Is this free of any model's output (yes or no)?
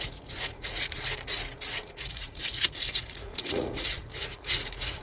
no